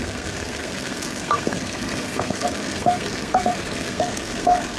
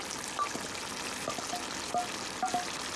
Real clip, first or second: second